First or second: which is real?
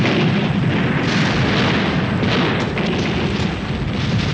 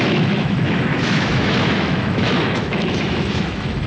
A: first